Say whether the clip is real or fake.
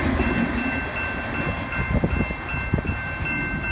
real